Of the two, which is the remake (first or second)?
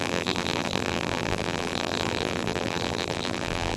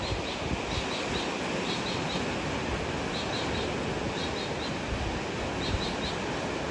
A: first